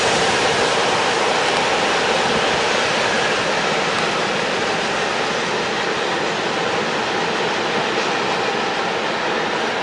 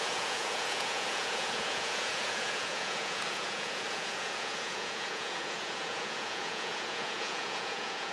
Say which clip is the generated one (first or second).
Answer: second